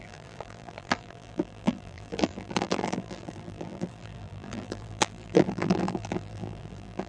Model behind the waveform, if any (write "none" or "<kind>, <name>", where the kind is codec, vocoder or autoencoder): vocoder, BigVGAN v2